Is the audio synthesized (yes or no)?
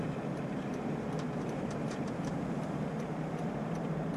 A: yes